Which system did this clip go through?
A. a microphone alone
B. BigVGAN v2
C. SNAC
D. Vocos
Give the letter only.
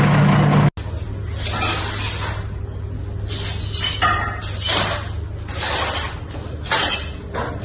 A